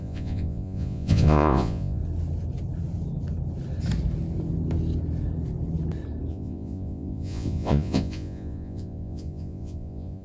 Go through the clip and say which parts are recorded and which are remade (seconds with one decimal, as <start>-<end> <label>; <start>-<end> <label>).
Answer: 0.0-2.0 remade; 2.0-6.3 recorded; 6.3-10.2 remade